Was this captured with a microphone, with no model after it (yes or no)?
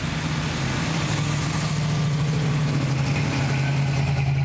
yes